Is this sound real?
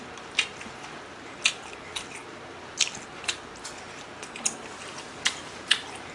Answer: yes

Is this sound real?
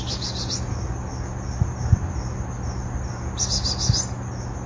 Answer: yes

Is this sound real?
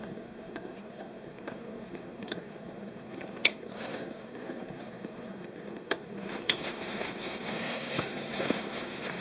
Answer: no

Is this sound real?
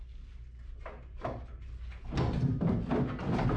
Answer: yes